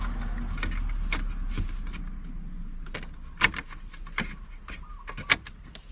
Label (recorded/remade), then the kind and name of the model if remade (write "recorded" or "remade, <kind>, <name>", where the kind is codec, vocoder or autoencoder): recorded